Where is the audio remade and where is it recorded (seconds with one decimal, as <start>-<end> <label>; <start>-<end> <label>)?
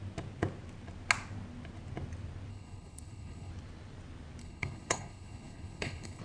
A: 0.0-2.5 recorded; 2.5-3.5 remade; 3.5-4.4 recorded; 4.4-6.2 remade